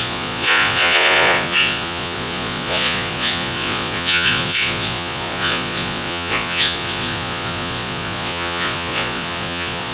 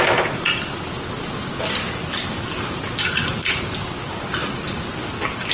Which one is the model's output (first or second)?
first